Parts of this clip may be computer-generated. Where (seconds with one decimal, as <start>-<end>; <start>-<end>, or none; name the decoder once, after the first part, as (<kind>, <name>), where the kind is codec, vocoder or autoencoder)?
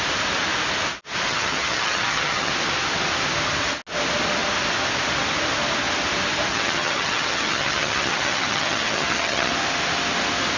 1.3-2.5 (vocoder, HiFi-GAN); 6.5-9.5